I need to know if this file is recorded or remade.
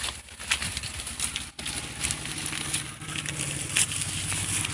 recorded